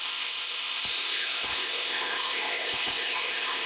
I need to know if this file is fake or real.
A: fake